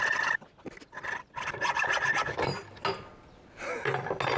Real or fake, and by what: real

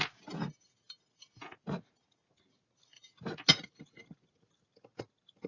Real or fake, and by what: real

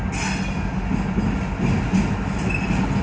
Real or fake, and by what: real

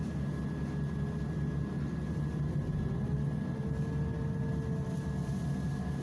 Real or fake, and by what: real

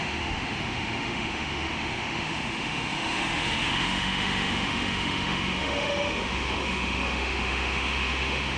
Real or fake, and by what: fake, autoencoder, DAC-VAE